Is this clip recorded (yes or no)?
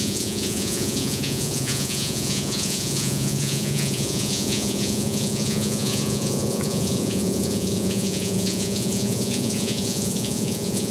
no